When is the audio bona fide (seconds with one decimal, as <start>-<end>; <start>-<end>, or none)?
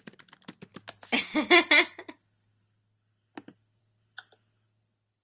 0.0-5.2